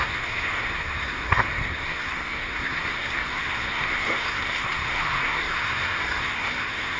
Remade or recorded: remade